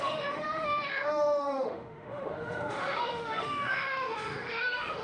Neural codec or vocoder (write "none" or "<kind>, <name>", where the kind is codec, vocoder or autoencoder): autoencoder, DAC-VAE